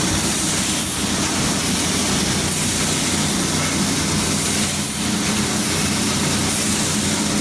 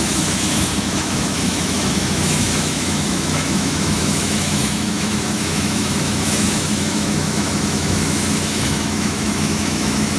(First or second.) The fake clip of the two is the second